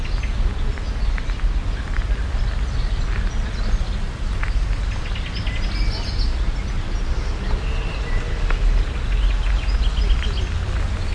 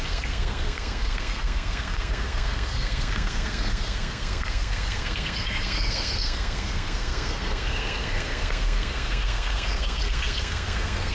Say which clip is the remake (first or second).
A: second